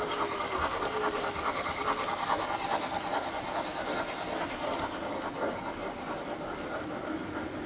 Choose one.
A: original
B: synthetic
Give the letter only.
A